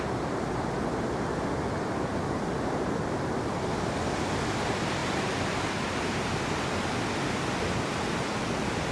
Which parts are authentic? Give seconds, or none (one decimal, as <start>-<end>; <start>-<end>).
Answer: 0.0-8.9